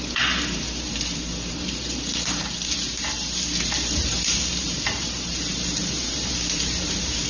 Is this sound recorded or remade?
remade